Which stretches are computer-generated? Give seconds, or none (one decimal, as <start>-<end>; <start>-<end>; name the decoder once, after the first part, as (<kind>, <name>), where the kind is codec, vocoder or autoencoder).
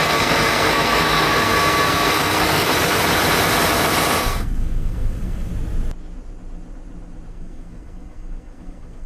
0.0-2.7 (codec, SNAC); 4.2-5.5; 7.3-9.1